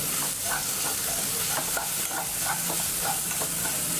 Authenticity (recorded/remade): recorded